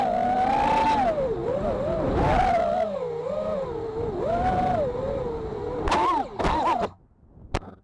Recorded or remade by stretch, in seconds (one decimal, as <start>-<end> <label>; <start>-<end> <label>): 0.0-7.8 recorded